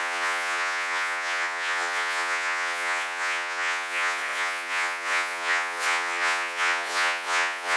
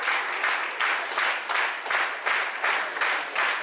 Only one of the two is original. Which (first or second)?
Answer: second